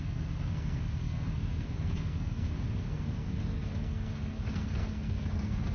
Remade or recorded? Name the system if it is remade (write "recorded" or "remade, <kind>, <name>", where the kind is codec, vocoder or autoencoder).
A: remade, codec, SNAC